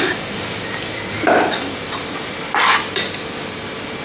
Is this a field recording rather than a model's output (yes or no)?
yes